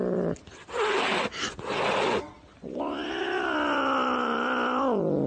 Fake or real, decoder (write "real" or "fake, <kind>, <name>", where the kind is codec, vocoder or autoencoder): real